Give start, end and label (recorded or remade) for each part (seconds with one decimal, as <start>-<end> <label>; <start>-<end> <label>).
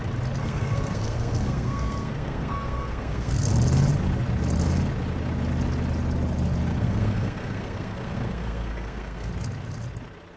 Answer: 0.0-0.4 recorded; 0.4-3.5 remade; 3.5-6.7 recorded; 6.7-9.3 remade; 9.3-10.4 recorded